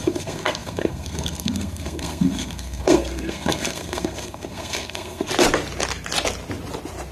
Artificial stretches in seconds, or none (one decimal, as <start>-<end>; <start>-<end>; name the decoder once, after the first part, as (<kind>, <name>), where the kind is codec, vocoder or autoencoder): 0.0-5.3 (codec, SNAC)